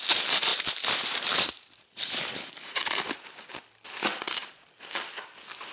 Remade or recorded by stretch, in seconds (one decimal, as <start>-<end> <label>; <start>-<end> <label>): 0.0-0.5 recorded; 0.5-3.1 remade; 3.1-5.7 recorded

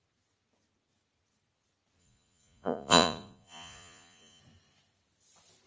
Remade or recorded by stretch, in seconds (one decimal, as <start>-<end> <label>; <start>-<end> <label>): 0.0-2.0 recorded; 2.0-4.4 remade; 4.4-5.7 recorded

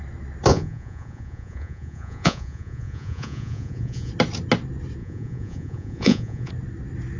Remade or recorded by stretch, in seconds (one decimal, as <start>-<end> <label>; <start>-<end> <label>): 0.0-0.5 recorded; 0.5-4.1 remade; 4.1-5.0 recorded; 5.0-6.5 remade; 6.5-7.2 recorded